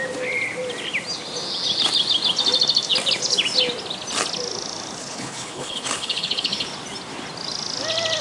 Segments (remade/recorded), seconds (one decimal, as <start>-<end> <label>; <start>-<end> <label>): 0.0-5.0 recorded; 5.0-6.7 remade; 6.7-8.2 recorded